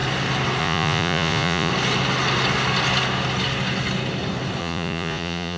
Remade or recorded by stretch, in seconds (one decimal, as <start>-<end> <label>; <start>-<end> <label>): 0.0-0.6 recorded; 0.6-1.7 remade; 1.7-4.6 recorded; 4.6-5.6 remade

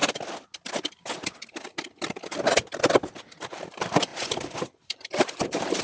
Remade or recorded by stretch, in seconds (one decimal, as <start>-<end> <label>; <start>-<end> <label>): 0.0-3.5 recorded; 3.5-4.1 remade; 4.1-4.8 recorded; 4.8-5.8 remade

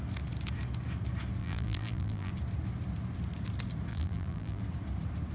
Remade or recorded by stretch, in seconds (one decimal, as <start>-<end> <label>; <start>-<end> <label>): 0.0-1.4 recorded; 1.4-2.3 remade; 2.3-3.9 recorded; 3.9-4.6 remade; 4.6-5.3 recorded

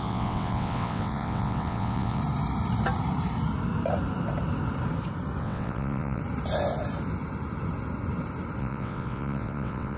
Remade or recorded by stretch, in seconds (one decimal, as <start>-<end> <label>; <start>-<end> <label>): 0.0-2.2 remade; 2.2-5.4 recorded; 5.4-6.2 remade; 6.2-8.6 recorded; 8.6-10.0 remade

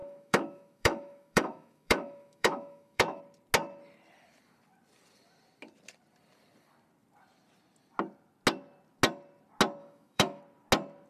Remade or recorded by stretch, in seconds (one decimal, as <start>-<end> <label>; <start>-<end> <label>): 0.0-3.2 remade; 3.2-9.8 recorded; 9.8-10.4 remade; 10.4-11.1 recorded

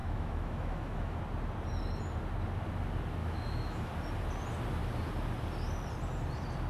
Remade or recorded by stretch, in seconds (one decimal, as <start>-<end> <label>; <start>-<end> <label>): 0.0-1.2 remade; 1.2-3.2 recorded; 3.2-3.9 remade; 3.9-6.7 recorded

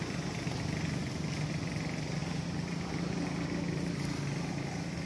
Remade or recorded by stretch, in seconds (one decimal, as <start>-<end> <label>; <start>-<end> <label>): 0.0-5.1 recorded